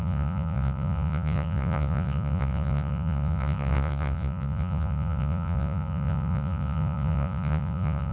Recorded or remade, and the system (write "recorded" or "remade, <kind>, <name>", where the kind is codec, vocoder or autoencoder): remade, vocoder, Vocos